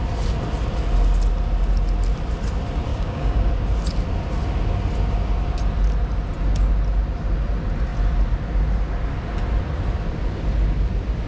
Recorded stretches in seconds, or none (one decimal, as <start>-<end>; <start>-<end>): 0.0-2.9; 3.5-11.3